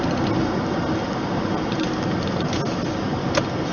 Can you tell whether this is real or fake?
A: real